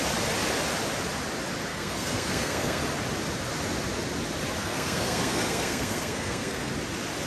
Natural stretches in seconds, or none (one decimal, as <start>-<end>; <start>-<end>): 0.0-1.7; 2.8-4.6; 6.7-7.3